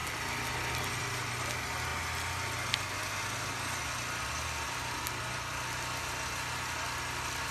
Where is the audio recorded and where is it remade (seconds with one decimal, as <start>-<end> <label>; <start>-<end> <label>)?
0.0-7.5 recorded